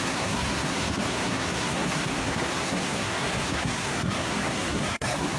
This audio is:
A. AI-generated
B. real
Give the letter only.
A